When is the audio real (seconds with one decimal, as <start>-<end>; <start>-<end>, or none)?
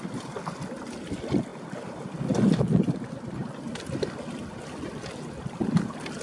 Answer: 0.0-6.2